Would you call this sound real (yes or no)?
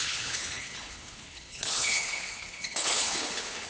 no